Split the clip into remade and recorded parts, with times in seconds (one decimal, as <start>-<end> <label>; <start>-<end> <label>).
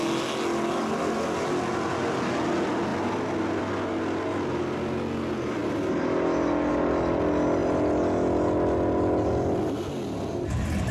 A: 0.0-10.9 recorded